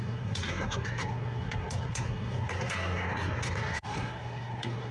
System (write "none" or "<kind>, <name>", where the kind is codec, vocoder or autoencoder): codec, SNAC